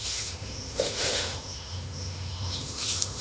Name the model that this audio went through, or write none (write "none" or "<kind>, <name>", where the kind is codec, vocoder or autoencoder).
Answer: autoencoder, DAC-VAE